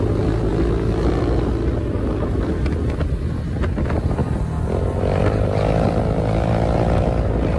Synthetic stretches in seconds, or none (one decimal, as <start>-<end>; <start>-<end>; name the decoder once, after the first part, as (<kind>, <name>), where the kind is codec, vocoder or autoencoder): none